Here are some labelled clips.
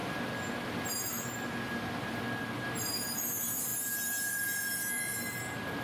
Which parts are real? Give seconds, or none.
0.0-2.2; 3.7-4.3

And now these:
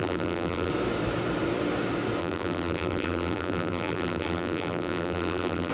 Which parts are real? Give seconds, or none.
0.7-2.2

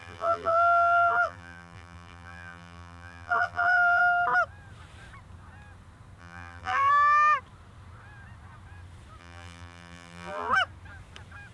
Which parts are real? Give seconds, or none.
4.0-6.2; 6.9-9.2; 10.5-11.5

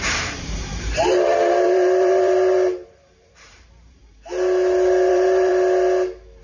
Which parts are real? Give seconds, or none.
4.0-5.1; 5.5-6.4

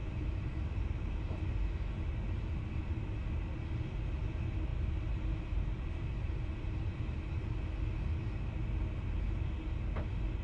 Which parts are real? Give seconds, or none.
1.4-4.7; 6.9-10.4